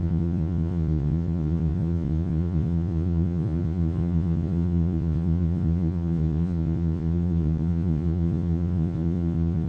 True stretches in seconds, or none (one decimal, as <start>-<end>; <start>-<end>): none